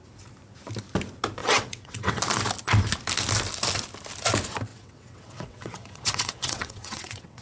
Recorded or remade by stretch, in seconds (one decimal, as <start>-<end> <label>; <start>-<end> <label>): 0.0-1.4 recorded; 1.4-2.2 remade; 2.2-4.7 recorded; 4.7-7.4 remade